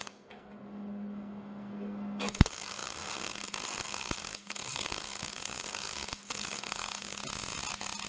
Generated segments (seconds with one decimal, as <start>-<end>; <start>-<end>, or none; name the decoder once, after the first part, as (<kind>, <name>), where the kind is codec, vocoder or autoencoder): 0.0-7.2 (codec, SNAC)